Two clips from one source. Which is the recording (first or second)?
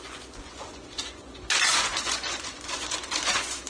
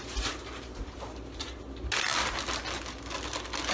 second